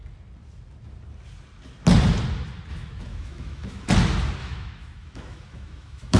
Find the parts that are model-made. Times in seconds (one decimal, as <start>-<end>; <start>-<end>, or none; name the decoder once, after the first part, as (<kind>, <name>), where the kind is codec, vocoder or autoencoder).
2.7-3.9 (autoencoder, DAC-VAE); 4.4-6.2